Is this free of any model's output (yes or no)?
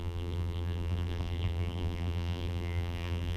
no